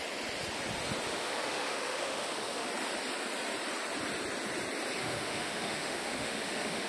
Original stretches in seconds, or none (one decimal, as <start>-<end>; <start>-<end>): 0.0-1.1; 2.7-5.0